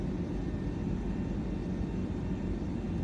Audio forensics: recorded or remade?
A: recorded